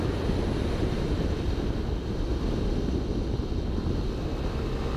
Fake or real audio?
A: real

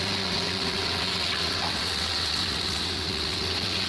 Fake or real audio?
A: fake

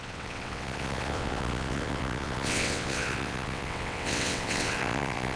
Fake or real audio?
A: fake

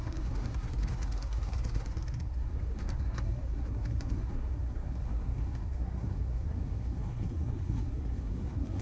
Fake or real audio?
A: fake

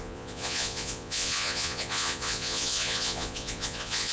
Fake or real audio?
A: fake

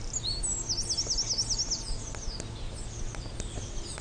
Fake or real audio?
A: real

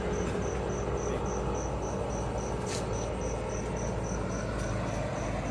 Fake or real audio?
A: real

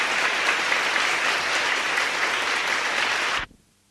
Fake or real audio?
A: real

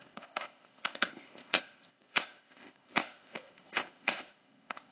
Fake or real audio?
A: fake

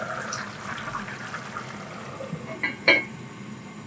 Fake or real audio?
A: real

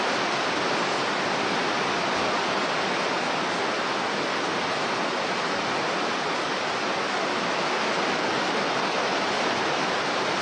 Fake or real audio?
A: real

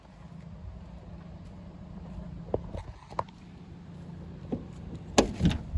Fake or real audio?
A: real